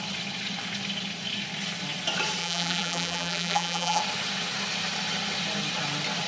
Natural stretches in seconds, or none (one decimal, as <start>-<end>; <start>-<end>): 0.0-2.4; 4.0-6.3